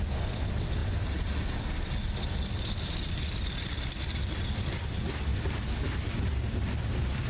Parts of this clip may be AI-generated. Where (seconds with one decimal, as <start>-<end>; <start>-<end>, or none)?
0.0-0.8; 3.1-5.3